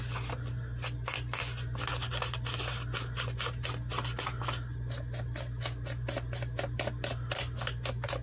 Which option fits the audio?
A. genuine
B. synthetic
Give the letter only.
A